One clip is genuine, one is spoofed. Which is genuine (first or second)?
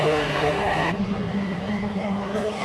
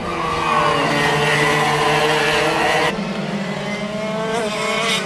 second